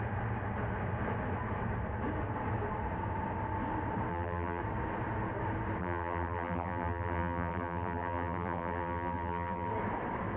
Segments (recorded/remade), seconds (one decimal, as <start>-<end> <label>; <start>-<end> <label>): 0.0-4.1 recorded; 4.1-4.6 remade; 4.6-5.8 recorded; 5.8-9.7 remade; 9.7-10.4 recorded